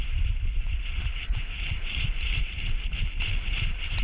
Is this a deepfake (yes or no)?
yes